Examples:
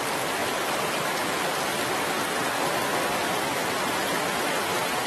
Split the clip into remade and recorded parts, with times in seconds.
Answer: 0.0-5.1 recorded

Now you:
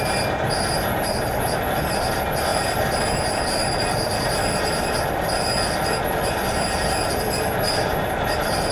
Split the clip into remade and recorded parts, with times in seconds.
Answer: 0.0-8.7 recorded

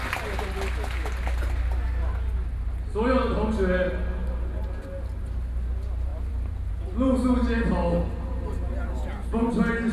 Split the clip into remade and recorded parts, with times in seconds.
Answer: 0.0-6.1 recorded; 6.1-6.7 remade; 6.7-9.9 recorded

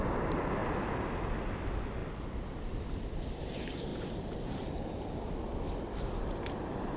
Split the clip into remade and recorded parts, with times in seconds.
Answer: 0.0-3.9 recorded; 3.9-5.3 remade; 5.3-7.0 recorded

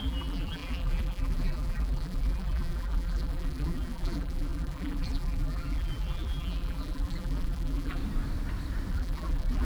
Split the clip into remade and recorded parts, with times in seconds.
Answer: 0.0-8.0 remade; 8.0-8.9 recorded; 8.9-9.6 remade